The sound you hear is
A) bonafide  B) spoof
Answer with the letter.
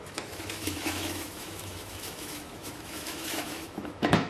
B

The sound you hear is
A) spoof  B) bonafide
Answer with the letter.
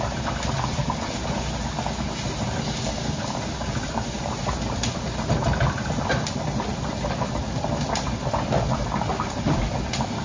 B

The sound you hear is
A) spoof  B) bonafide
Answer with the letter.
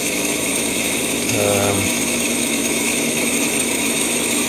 A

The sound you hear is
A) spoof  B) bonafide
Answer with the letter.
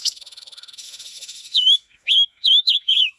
A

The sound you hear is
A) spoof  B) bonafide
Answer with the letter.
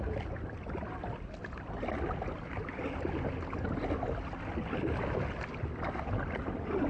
B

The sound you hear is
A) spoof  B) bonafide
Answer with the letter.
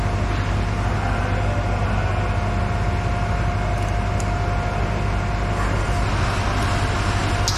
B